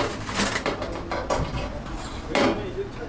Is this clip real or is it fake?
real